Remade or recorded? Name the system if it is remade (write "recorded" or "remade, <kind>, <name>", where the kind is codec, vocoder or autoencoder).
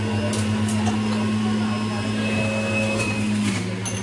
recorded